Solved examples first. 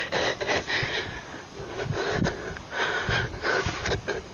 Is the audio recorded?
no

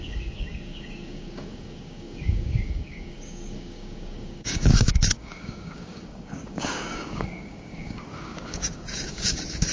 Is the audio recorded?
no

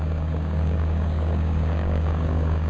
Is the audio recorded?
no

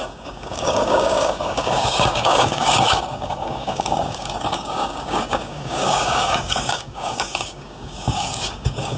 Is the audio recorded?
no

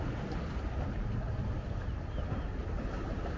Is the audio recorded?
yes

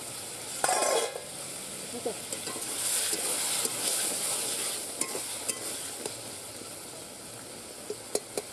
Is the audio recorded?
yes